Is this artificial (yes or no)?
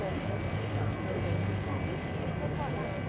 no